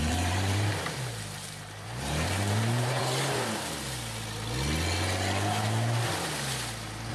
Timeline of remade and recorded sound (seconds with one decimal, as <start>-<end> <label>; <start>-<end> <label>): 0.0-3.0 remade; 3.0-7.1 recorded